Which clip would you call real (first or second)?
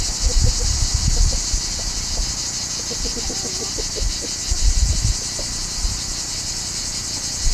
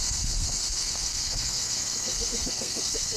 first